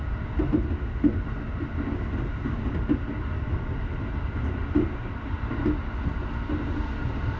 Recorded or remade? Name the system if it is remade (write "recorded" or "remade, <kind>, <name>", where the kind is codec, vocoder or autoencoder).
recorded